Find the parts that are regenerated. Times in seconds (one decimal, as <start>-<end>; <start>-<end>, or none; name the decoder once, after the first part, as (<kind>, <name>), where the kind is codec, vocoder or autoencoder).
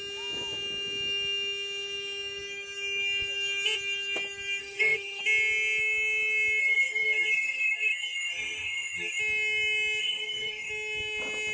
4.6-5.2 (codec, DAC); 6.6-9.2; 10.0-10.7